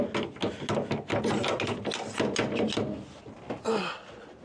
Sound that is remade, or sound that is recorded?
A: recorded